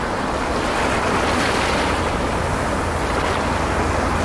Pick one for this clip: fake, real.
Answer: real